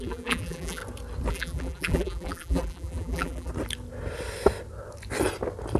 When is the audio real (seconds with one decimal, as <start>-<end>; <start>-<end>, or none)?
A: 0.8-1.3; 3.5-5.8